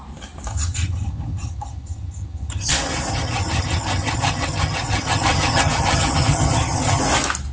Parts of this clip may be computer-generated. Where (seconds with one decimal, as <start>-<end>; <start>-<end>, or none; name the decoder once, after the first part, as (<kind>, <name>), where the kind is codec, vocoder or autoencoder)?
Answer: 0.5-2.7 (vocoder, HiFi-GAN); 3.1-7.0